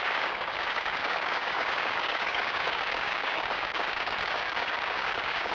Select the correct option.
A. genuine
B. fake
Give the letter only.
B